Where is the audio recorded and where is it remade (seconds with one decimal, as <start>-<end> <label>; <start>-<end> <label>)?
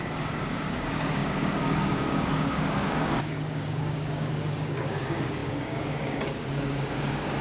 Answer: 0.0-7.4 remade